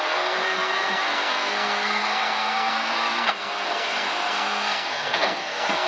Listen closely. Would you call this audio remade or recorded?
remade